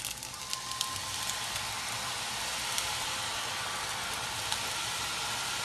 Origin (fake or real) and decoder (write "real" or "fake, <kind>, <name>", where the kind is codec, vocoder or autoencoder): real